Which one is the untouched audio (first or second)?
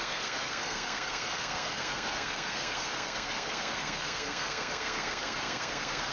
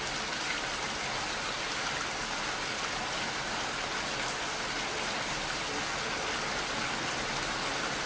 second